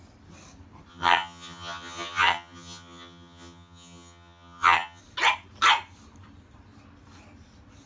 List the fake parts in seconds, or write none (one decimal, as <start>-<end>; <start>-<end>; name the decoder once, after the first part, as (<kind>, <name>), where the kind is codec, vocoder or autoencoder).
0.9-5.0 (vocoder, HiFi-GAN)